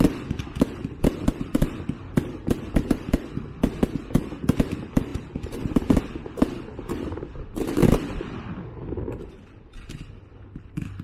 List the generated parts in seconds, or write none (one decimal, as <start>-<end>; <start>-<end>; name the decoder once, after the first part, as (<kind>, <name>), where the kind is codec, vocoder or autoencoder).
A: none